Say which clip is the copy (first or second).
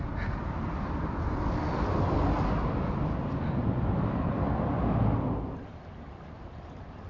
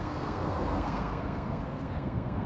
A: second